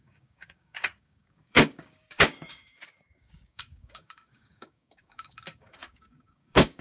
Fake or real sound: fake